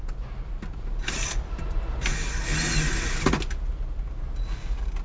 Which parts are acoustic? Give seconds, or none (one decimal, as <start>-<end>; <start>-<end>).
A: 0.0-5.0